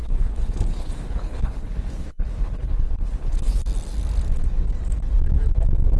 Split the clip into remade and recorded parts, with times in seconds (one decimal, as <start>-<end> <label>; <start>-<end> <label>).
0.0-3.6 remade; 3.6-6.0 recorded